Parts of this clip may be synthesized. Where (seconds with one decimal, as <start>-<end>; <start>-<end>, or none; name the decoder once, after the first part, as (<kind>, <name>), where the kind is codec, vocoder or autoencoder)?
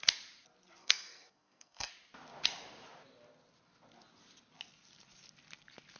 0.8-1.9 (codec, SNAC)